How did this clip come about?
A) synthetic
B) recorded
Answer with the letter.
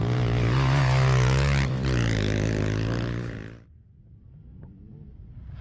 B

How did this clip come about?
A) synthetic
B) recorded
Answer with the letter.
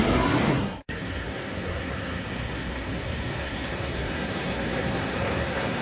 A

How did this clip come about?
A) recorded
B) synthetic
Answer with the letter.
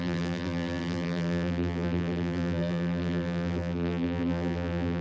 B